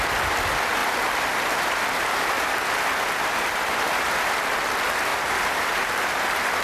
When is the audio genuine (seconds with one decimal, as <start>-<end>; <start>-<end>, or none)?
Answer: 0.0-5.1; 6.1-6.6